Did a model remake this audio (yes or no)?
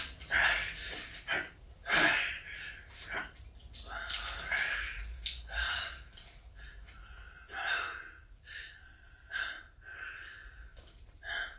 no